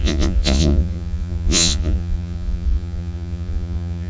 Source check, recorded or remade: remade